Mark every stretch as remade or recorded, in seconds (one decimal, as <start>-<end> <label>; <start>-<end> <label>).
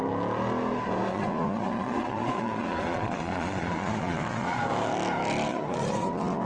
0.0-1.1 recorded; 1.1-4.6 remade; 4.6-5.5 recorded; 5.5-6.4 remade